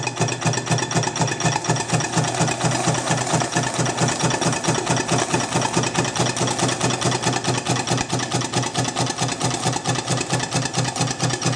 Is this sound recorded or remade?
recorded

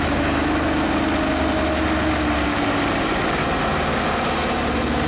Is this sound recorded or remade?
recorded